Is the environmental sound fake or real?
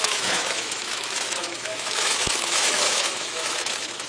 fake